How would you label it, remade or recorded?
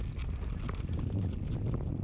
recorded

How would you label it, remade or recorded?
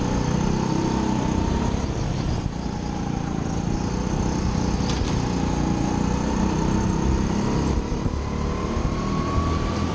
recorded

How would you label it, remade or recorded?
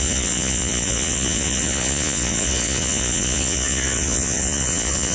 remade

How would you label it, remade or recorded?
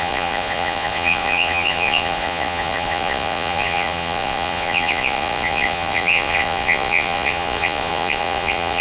remade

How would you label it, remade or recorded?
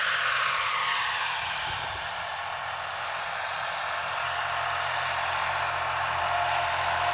recorded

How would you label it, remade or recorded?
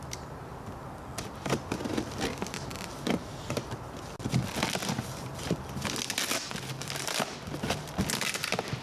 recorded